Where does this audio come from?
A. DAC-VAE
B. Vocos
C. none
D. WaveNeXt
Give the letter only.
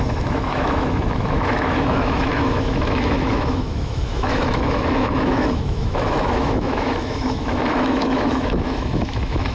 A